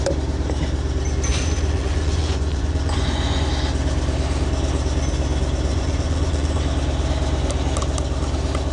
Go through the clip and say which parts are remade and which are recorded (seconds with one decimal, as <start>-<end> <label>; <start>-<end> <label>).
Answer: 0.0-1.3 recorded; 1.3-3.5 remade; 3.5-5.7 recorded; 5.7-6.6 remade; 6.6-8.7 recorded